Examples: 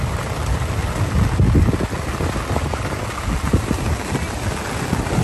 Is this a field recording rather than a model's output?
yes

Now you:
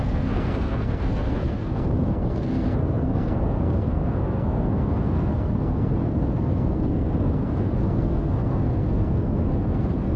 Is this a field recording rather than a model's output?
no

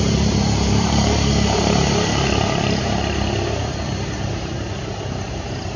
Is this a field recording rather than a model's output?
no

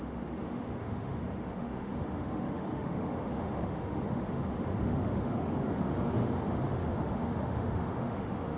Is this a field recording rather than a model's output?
no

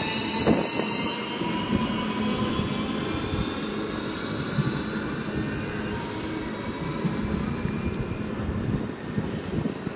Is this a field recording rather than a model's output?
yes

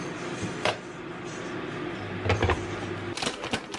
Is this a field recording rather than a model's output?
yes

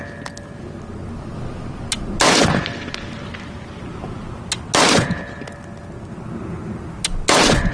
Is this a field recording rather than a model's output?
yes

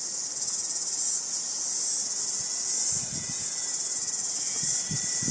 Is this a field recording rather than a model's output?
no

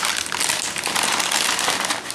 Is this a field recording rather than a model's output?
yes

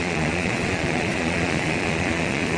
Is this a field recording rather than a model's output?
no